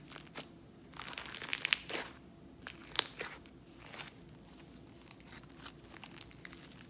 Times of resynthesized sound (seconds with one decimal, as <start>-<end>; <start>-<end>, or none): none

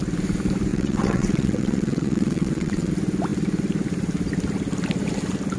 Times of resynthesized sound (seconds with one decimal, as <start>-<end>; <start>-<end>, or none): 0.7-2.9

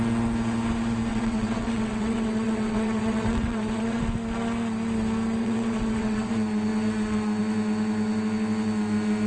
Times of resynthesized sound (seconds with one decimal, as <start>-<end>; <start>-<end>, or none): 1.1-4.0; 5.4-6.3

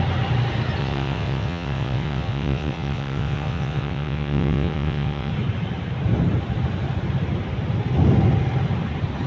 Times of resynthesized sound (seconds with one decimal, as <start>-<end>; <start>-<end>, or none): 0.8-5.3